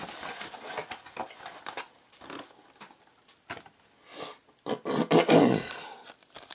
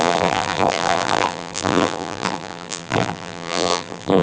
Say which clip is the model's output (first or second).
second